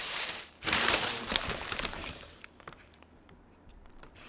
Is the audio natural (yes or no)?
no